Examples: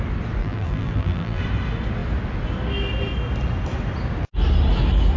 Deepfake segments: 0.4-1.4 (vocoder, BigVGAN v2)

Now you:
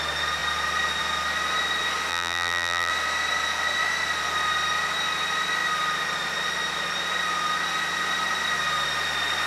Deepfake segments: 2.1-2.9 (vocoder, BigVGAN v2)

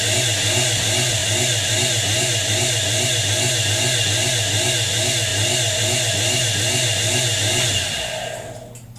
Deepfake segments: none